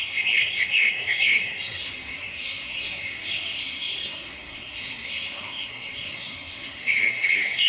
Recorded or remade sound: remade